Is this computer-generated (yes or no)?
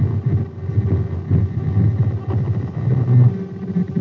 no